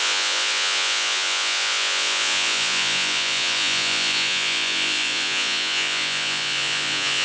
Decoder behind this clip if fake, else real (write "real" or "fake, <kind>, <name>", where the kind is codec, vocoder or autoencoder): fake, vocoder, Vocos